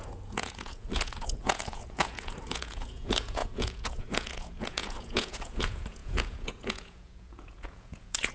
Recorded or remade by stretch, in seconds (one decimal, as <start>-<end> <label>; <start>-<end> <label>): 0.0-8.3 remade